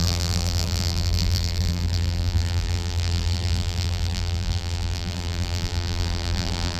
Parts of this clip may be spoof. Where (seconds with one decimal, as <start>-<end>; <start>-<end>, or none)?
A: 0.0-6.8

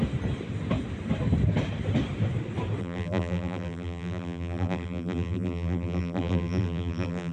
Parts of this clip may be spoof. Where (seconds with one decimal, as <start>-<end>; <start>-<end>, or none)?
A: 2.8-7.3

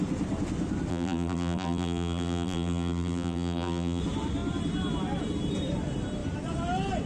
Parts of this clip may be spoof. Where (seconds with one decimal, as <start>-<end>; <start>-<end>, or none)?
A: 0.9-4.0

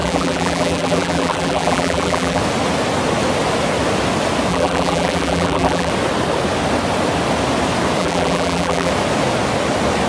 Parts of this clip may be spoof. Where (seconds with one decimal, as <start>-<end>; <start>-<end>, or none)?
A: 0.0-2.4; 4.5-5.9; 8.0-8.9

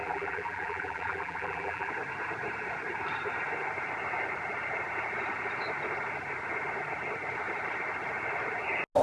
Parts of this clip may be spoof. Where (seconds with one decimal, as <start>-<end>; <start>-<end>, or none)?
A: 0.0-1.9